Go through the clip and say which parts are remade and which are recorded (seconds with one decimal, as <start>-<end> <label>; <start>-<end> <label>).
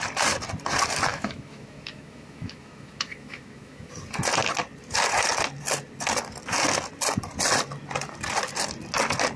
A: 0.0-1.1 recorded; 1.1-3.9 remade; 3.9-9.4 recorded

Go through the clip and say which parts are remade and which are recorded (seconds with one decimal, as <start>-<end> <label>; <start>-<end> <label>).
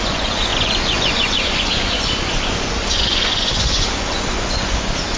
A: 0.0-5.2 remade